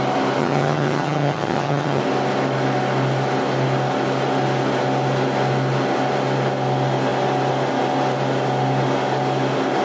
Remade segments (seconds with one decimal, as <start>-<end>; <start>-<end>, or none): 0.4-2.0

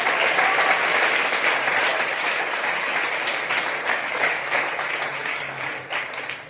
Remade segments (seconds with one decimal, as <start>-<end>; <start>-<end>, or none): 1.9-2.9; 3.9-4.7; 5.2-5.8

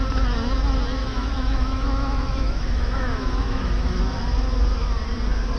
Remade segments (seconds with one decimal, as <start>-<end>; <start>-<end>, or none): 1.0-4.0

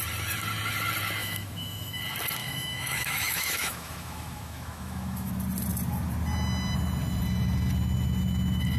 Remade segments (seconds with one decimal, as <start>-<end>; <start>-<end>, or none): 1.2-2.0; 2.4-5.3